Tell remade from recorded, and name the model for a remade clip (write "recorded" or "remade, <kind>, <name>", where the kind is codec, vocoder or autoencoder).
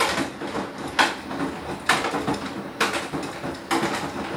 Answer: recorded